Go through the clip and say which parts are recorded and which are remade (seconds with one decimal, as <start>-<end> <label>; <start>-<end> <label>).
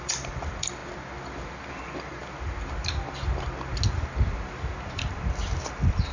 0.0-0.8 remade; 0.8-1.7 recorded; 1.7-2.2 remade; 2.2-5.1 recorded; 5.1-6.1 remade